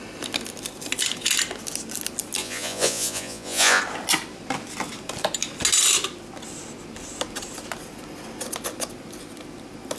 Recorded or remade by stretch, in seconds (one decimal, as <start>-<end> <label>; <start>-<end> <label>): 0.0-2.4 recorded; 2.4-3.8 remade; 3.8-10.0 recorded